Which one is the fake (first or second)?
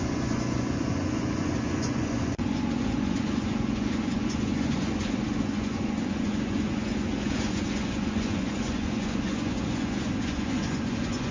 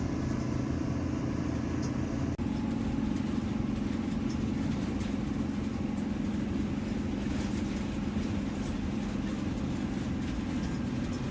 first